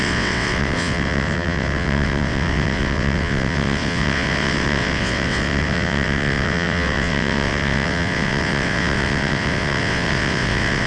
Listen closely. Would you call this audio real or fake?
fake